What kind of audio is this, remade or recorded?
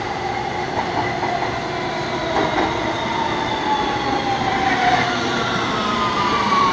remade